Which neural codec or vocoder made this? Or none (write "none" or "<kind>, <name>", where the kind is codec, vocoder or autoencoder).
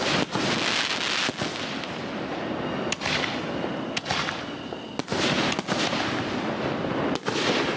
none